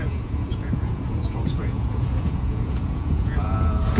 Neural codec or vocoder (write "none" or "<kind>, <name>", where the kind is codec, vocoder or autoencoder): vocoder, Vocos